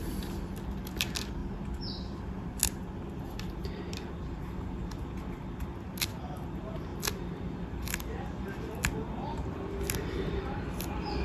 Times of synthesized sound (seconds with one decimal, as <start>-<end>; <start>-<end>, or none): 1.4-2.6